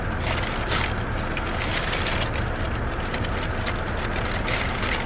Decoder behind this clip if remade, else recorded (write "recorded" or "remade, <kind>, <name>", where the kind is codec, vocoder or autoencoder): recorded